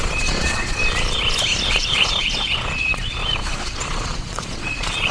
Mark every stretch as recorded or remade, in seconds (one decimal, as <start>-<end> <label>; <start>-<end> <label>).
0.0-0.8 remade; 0.8-1.7 recorded; 1.7-5.1 remade